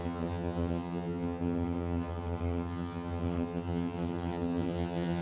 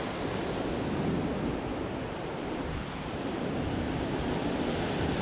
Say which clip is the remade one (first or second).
first